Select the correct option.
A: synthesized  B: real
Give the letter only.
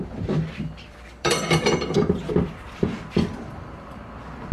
A